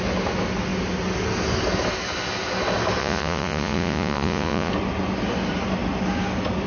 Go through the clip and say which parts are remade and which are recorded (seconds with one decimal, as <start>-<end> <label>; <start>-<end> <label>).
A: 0.0-3.0 recorded; 3.0-4.7 remade; 4.7-6.7 recorded